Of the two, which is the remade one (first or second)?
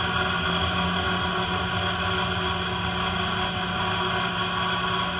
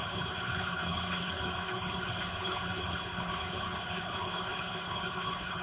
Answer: second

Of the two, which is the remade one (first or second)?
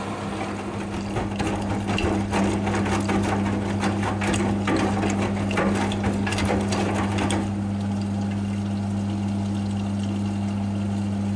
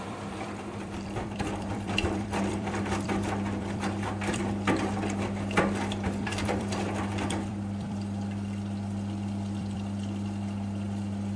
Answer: second